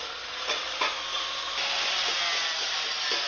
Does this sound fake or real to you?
real